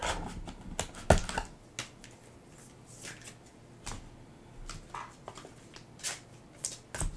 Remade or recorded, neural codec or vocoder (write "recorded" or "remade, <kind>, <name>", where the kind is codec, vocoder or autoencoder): recorded